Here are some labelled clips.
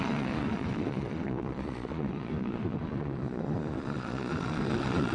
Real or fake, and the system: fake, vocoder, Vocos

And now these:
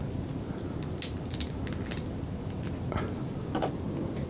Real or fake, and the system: real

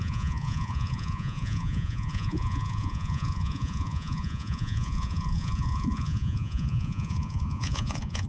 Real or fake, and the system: fake, vocoder, Vocos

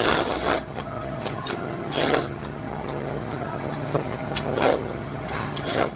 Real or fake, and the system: fake, vocoder, HiFi-GAN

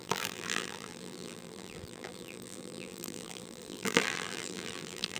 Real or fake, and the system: fake, vocoder, BigVGAN v2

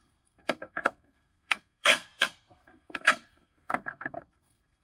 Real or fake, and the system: fake, codec, SNAC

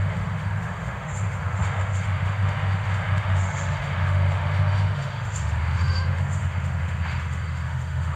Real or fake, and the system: fake, autoencoder, DAC-VAE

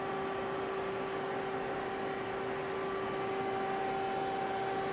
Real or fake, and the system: real